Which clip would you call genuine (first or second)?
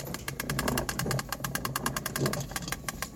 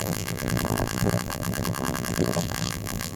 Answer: first